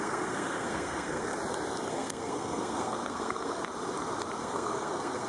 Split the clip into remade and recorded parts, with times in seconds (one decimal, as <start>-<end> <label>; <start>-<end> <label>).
0.0-1.3 remade; 1.3-1.9 recorded; 1.9-3.6 remade; 3.6-4.4 recorded; 4.4-5.3 remade